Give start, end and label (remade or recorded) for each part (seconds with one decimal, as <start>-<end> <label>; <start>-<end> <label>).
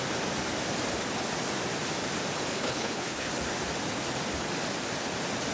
0.0-2.5 recorded; 2.5-3.3 remade; 3.3-5.5 recorded